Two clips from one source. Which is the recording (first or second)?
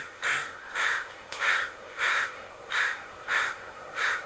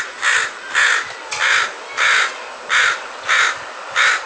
second